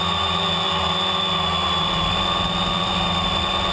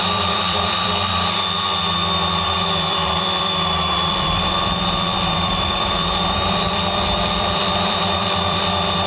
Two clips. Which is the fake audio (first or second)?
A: second